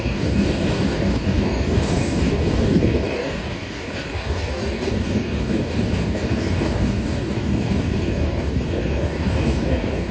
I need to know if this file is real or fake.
fake